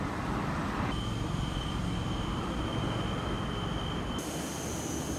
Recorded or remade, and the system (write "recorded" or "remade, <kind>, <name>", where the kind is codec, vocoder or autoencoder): recorded